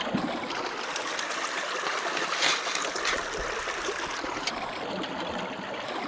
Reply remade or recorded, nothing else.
recorded